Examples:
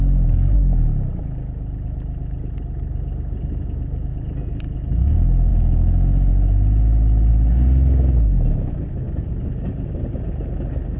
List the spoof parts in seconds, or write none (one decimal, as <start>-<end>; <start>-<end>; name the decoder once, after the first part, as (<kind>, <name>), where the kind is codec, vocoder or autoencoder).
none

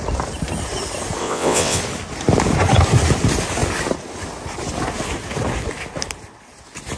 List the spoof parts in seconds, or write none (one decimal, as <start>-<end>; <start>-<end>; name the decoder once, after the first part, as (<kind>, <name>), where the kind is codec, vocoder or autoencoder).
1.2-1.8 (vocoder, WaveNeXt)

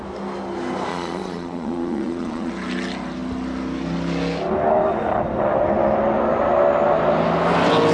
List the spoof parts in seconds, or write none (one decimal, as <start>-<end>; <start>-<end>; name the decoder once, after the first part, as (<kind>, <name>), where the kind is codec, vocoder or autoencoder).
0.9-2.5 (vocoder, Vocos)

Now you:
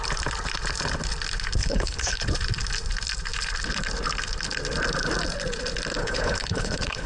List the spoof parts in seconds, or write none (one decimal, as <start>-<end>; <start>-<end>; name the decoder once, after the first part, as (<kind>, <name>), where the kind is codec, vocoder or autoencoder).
1.6-2.2 (codec, HILCodec); 6.0-7.1

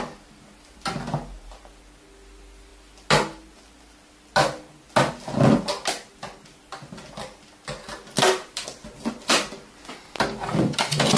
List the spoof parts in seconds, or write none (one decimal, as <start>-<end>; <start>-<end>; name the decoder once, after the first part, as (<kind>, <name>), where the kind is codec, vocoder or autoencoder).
none

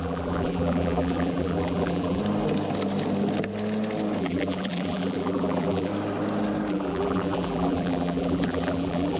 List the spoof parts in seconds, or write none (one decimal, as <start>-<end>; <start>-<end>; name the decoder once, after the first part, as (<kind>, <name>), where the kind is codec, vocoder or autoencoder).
0.0-2.2 (vocoder, BigVGAN v2); 4.2-5.9; 6.7-9.2

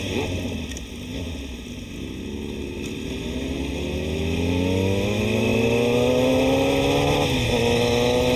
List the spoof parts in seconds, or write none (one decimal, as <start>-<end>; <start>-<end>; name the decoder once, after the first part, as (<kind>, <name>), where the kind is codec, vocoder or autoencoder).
none